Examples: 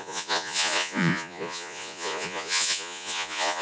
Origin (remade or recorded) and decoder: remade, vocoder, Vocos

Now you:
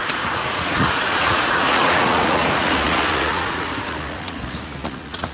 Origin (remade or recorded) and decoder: remade, vocoder, Vocos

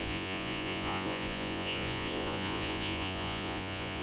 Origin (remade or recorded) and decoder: remade, vocoder, Vocos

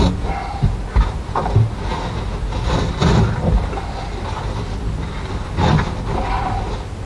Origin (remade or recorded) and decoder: recorded